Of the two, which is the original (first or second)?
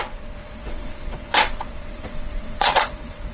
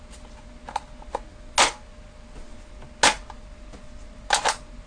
second